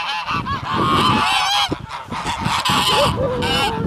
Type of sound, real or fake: real